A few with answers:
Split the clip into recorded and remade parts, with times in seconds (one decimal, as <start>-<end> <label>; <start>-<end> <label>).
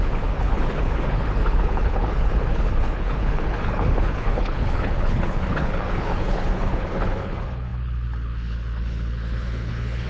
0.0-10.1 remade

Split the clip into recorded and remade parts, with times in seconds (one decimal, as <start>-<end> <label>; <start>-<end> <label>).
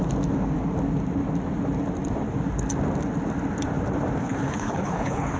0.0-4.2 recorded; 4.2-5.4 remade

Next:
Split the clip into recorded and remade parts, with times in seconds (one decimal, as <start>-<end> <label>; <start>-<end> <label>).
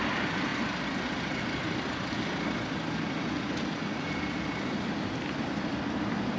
0.0-6.4 recorded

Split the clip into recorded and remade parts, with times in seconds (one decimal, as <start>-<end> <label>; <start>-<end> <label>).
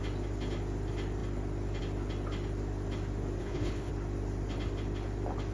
0.0-3.4 recorded; 3.4-3.9 remade; 3.9-5.5 recorded